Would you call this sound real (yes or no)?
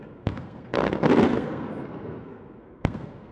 no